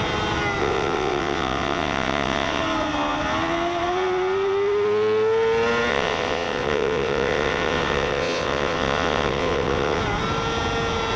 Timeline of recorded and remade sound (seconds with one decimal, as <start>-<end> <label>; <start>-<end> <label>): 0.0-0.6 recorded; 0.6-2.6 remade; 2.6-5.9 recorded; 5.9-10.0 remade; 10.0-11.2 recorded

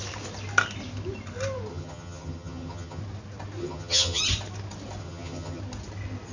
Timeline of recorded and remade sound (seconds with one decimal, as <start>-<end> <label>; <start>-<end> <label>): 0.0-1.7 recorded; 1.7-3.0 remade; 3.0-3.6 recorded; 3.6-4.2 remade; 4.2-5.0 recorded; 5.0-5.6 remade; 5.6-6.3 recorded

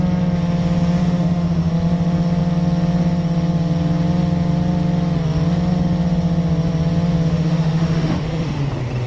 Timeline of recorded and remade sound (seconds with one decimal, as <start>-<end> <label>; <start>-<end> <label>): 0.0-1.0 recorded; 1.0-1.7 remade; 1.7-7.3 recorded; 7.3-8.7 remade; 8.7-9.1 recorded

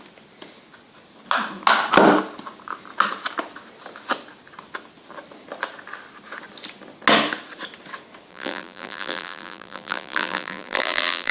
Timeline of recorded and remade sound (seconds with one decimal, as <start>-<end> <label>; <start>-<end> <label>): 0.0-8.3 recorded; 8.3-11.3 remade